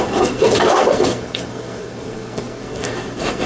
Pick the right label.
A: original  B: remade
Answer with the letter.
B